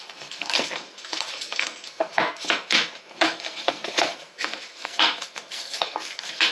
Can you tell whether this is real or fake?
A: fake